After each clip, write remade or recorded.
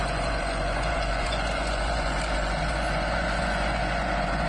remade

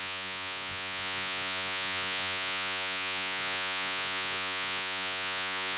remade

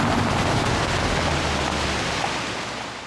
recorded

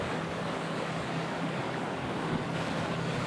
remade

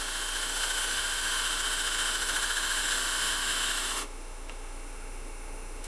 remade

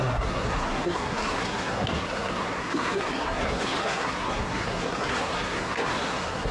remade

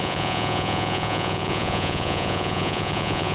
remade